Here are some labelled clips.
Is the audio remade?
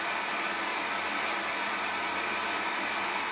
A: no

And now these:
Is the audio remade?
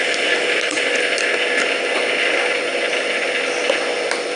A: no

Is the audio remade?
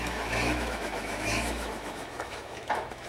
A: yes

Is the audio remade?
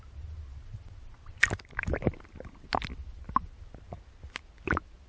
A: no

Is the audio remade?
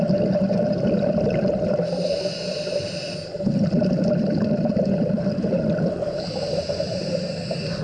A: no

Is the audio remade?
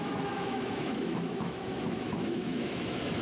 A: yes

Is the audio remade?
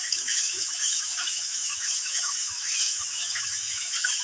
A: yes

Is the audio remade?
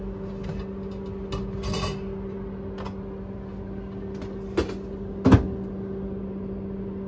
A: no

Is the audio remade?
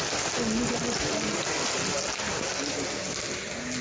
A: no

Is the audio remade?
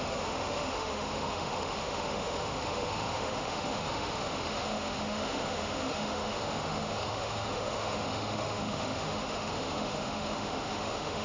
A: yes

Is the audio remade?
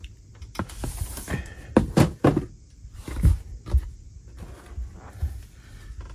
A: no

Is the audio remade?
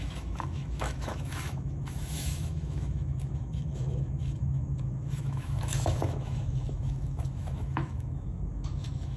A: yes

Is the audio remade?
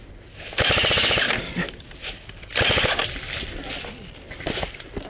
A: no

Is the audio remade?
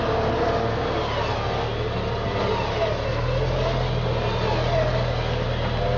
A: no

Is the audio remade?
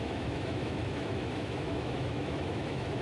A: yes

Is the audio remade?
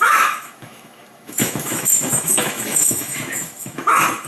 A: yes